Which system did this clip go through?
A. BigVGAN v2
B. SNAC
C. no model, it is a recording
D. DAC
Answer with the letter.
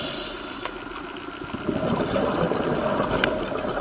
C